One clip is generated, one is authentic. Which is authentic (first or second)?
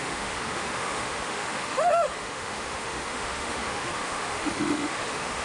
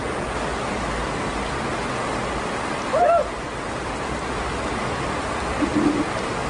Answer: second